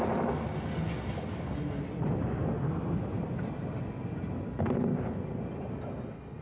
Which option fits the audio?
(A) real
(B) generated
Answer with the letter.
A